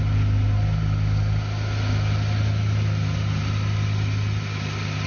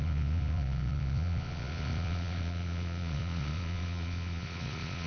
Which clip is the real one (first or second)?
first